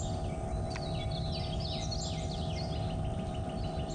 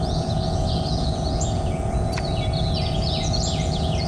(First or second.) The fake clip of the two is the second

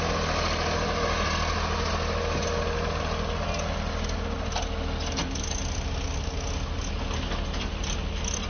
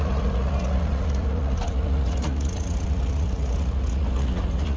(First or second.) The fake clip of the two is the second